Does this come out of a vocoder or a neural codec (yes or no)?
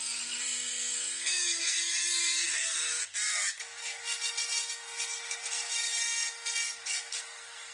yes